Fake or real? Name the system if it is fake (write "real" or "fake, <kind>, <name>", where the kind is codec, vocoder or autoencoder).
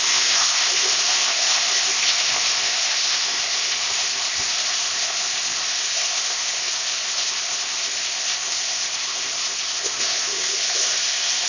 fake, codec, ZipCodec